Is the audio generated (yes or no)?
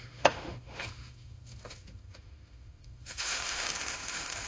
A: yes